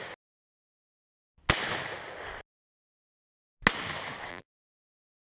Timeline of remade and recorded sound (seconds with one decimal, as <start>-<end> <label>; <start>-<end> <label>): 0.0-4.3 recorded; 4.3-5.2 remade